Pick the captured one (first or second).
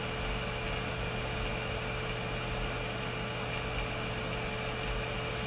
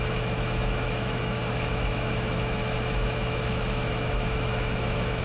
first